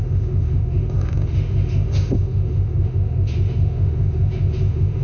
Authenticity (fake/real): fake